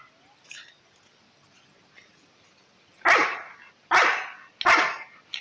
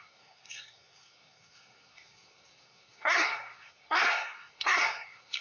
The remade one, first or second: second